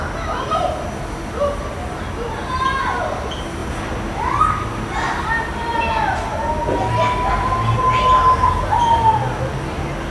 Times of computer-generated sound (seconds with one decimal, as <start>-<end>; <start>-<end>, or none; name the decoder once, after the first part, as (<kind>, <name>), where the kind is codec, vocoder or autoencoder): none